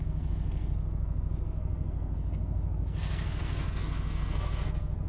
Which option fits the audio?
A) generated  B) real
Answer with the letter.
A